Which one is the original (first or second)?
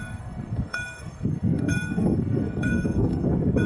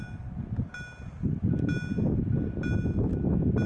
second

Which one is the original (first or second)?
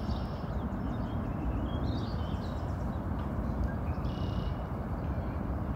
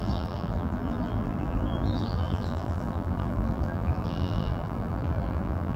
first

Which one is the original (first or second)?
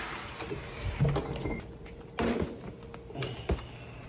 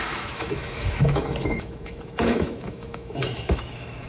first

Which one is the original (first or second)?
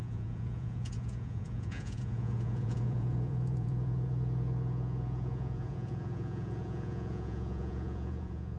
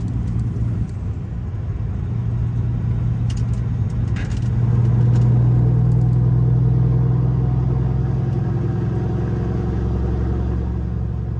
second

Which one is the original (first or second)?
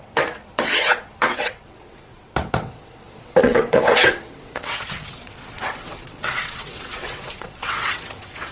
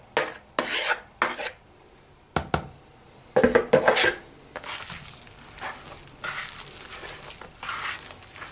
second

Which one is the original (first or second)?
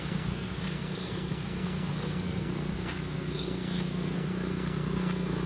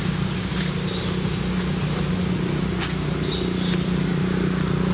second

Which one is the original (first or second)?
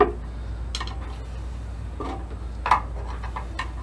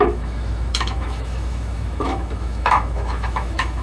first